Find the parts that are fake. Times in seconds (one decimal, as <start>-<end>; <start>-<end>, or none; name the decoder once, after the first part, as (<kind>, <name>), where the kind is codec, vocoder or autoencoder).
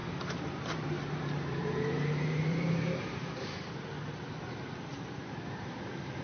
0.0-3.7 (vocoder, BigVGAN v2); 4.9-5.8